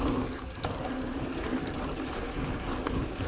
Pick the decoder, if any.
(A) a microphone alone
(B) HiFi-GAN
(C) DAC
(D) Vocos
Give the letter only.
A